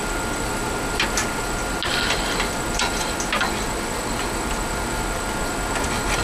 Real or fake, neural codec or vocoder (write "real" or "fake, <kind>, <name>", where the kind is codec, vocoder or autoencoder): real